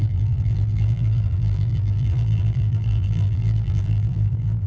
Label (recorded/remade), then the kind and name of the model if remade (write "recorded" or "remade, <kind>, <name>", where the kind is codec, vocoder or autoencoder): remade, vocoder, BigVGAN v2